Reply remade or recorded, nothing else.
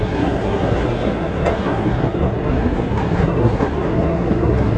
remade